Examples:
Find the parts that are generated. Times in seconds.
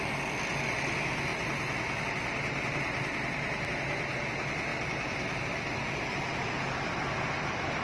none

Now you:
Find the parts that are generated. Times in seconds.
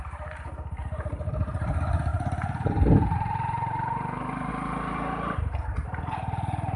2.1-4.5 (vocoder, BigVGAN v2)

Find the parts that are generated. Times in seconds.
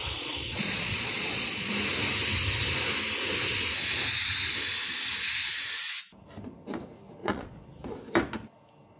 0.0-1.7 (vocoder, Vocos); 7.2-7.8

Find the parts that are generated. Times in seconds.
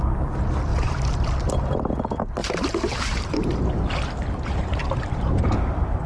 0.7-1.2 (vocoder, BigVGAN v2); 2.4-3.5; 4.8-6.1